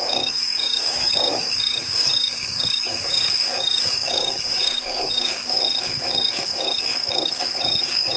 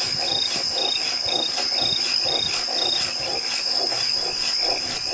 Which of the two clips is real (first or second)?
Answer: second